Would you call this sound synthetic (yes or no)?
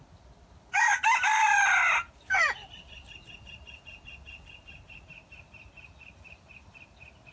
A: no